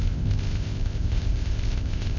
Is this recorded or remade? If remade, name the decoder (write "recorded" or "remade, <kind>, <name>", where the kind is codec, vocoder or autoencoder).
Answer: remade, codec, ZipCodec